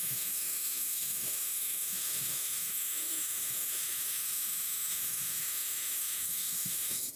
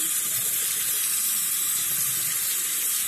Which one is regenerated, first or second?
first